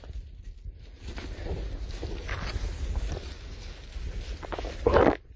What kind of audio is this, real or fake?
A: real